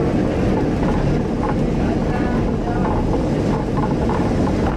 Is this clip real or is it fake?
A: real